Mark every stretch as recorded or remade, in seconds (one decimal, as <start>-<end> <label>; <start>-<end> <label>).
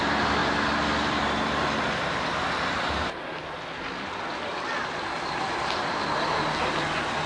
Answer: 0.0-7.3 recorded